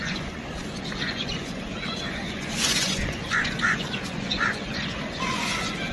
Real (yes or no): no